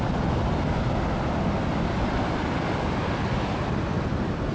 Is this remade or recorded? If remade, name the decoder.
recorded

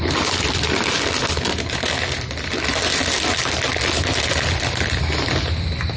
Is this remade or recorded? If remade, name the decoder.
recorded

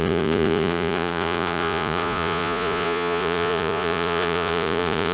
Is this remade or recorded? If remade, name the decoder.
remade, vocoder, Vocos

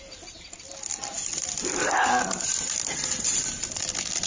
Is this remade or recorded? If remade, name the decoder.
recorded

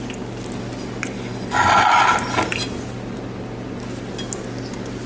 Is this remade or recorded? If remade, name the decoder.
recorded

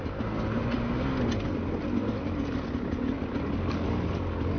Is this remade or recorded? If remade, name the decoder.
recorded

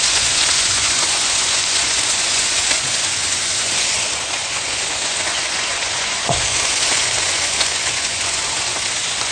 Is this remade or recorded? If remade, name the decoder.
remade, vocoder, Vocos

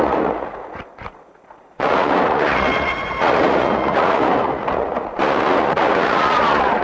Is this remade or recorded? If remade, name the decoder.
remade, vocoder, Vocos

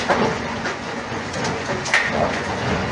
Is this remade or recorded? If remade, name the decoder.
remade, vocoder, Vocos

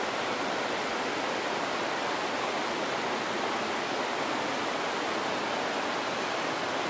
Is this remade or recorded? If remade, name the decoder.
recorded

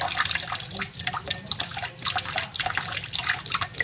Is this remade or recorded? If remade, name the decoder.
recorded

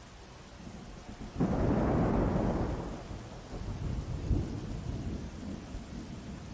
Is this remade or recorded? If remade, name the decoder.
recorded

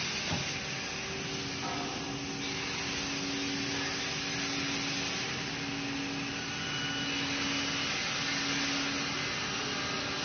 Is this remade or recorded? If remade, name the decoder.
recorded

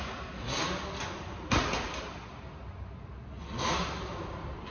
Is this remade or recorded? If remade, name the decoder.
recorded